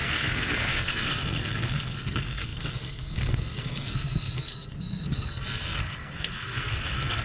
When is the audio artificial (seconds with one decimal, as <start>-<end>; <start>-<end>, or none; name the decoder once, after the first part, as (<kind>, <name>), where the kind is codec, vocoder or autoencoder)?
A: 0.0-7.2 (codec, SNAC)